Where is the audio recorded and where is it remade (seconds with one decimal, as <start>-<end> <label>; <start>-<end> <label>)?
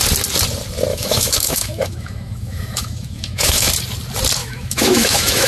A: 0.0-0.9 recorded; 0.9-3.7 remade; 3.7-4.4 recorded; 4.4-5.5 remade